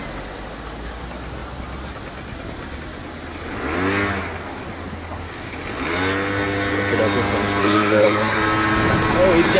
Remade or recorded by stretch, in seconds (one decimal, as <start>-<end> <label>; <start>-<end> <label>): 0.0-7.6 recorded; 7.6-8.4 remade; 8.4-9.6 recorded